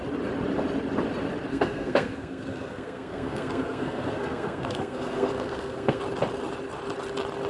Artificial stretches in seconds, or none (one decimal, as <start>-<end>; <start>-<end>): 1.5-6.0